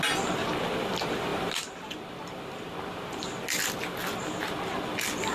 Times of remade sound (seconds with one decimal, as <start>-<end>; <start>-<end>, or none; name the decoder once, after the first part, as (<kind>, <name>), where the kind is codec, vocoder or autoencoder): none